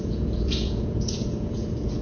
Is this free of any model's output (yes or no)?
no